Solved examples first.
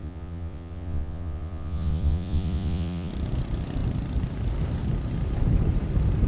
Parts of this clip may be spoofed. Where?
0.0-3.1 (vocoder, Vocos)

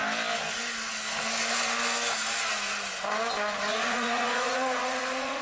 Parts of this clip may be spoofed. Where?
3.7-5.4 (vocoder, Vocos)